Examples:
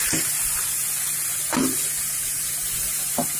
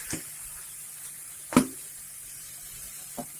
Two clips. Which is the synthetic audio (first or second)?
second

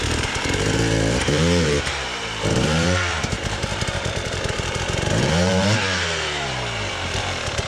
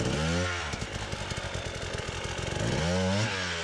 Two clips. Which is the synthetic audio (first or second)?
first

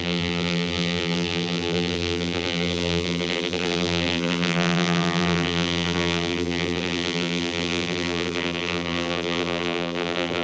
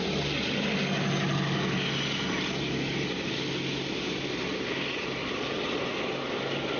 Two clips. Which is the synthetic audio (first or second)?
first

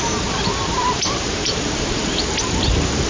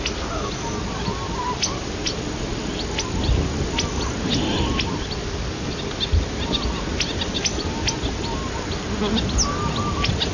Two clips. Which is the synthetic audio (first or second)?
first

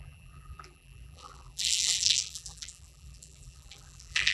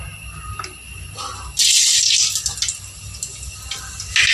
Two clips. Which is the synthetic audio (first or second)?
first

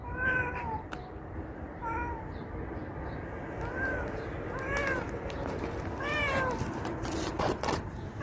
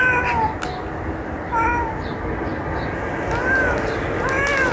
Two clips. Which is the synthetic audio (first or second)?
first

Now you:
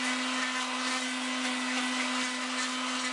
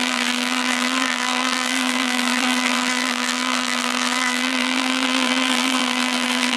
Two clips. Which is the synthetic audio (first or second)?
second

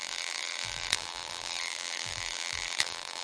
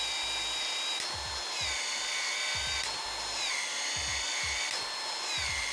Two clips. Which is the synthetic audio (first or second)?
first